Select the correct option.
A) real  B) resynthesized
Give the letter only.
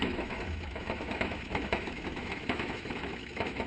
B